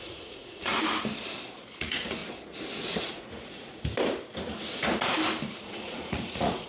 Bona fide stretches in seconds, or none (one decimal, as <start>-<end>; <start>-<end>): 0.7-1.8; 2.2-3.0; 3.8-5.6